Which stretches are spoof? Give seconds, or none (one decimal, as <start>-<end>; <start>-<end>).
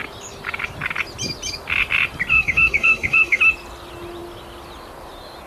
2.3-3.4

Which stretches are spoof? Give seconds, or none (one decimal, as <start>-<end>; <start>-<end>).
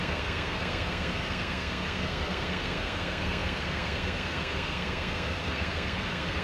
0.0-6.4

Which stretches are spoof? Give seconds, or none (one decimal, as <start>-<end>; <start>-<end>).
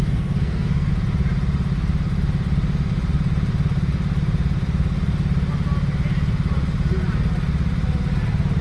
0.0-0.9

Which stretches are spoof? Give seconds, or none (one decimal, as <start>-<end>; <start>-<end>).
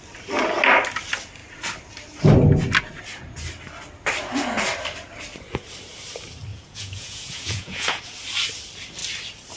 6.5-8.0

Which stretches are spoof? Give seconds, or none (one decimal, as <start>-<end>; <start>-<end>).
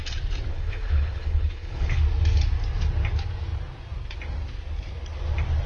0.5-2.0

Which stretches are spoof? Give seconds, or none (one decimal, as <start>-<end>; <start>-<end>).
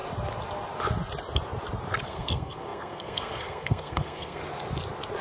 2.0-4.4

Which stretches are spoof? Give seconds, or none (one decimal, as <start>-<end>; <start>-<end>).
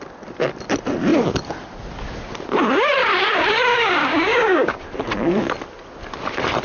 3.7-4.8